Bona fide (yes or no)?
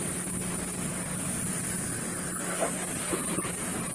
yes